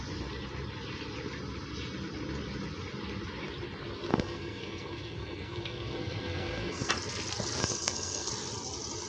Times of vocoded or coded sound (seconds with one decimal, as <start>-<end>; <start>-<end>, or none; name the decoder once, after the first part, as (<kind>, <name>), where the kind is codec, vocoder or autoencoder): 4.1-6.9 (codec, SNAC); 7.6-8.3